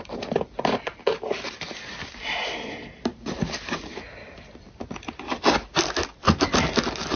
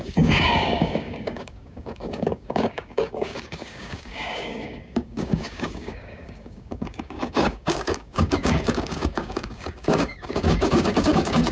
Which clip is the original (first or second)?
first